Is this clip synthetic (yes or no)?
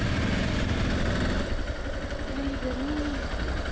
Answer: no